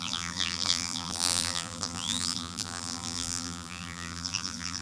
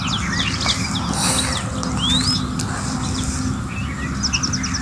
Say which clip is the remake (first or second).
first